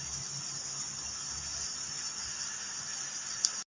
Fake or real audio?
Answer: real